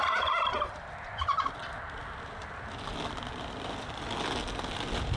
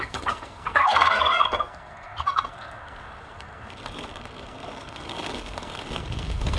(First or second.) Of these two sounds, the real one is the first